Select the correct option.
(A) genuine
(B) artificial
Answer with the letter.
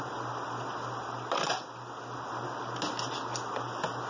A